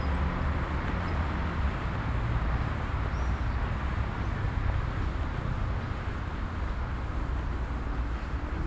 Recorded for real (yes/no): yes